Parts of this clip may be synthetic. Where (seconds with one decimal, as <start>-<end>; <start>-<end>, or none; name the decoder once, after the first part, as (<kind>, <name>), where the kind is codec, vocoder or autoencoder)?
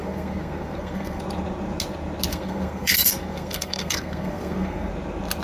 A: 0.0-1.2 (codec, SNAC); 2.3-4.9